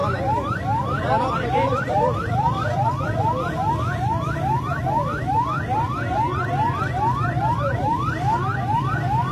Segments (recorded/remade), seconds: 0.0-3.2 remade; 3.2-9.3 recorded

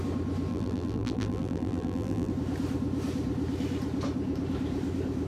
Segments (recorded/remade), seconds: 0.0-0.5 recorded; 0.5-2.3 remade; 2.3-5.3 recorded

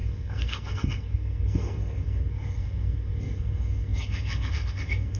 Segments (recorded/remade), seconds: 0.0-5.2 remade

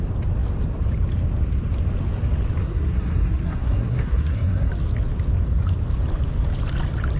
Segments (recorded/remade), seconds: 0.0-2.6 recorded; 2.6-4.7 remade; 4.7-7.2 recorded

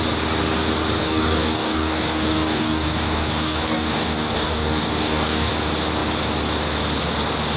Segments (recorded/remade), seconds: 0.0-1.0 recorded; 1.0-5.5 remade; 5.5-7.6 recorded

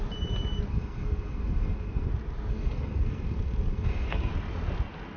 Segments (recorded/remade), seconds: 0.0-0.7 recorded; 0.7-2.1 remade; 2.1-2.5 recorded; 2.5-4.3 remade; 4.3-5.2 recorded

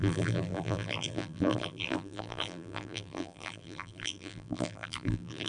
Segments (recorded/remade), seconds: 0.0-5.5 remade

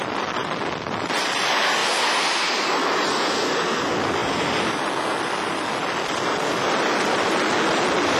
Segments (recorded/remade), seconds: 0.0-8.2 recorded